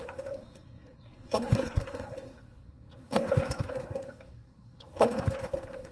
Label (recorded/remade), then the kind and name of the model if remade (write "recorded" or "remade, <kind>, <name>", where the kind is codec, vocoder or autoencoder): remade, codec, SNAC